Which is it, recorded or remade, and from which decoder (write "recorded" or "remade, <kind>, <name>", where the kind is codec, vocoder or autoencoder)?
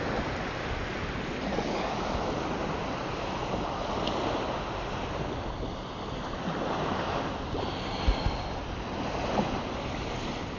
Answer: recorded